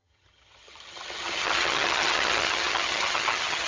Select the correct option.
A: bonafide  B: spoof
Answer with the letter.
B